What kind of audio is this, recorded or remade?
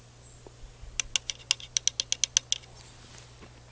recorded